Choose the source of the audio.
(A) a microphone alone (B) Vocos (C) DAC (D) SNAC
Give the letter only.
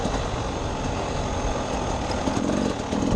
A